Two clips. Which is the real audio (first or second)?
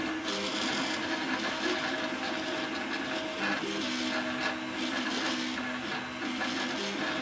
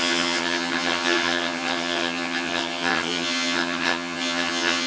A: first